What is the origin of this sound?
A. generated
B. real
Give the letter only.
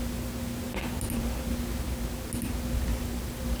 B